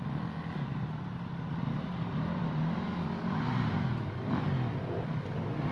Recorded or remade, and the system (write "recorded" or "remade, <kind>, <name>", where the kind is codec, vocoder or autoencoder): recorded